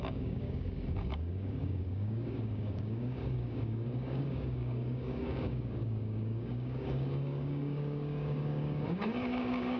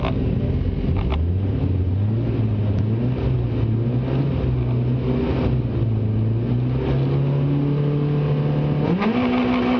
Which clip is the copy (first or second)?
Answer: first